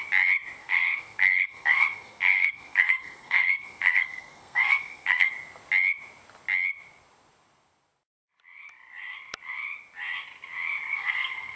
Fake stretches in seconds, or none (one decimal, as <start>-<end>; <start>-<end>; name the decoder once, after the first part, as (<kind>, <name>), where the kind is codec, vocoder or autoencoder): 0.6-5.3 (codec, SNAC); 10.9-11.6